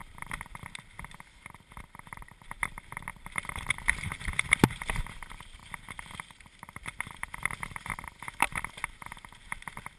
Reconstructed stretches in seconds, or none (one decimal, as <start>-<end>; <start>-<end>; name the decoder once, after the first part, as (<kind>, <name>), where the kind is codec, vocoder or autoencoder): 0.0-0.6 (vocoder, BigVGAN v2); 3.1-4.1; 5.6-7.5